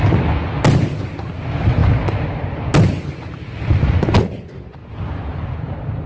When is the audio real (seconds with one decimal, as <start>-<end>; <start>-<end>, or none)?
0.0-6.1